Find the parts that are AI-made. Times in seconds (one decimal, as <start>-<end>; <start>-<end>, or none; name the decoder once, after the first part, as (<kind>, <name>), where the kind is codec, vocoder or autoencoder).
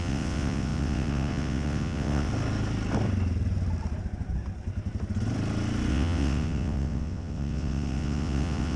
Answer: 0.0-2.3 (vocoder, WaveNeXt); 5.9-8.8